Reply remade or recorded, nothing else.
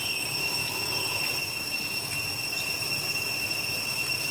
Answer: recorded